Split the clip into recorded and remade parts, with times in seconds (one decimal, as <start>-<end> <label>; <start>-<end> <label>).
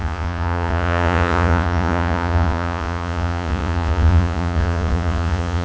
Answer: 0.0-5.6 remade